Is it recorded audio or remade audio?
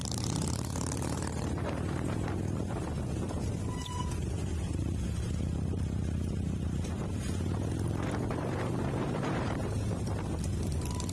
remade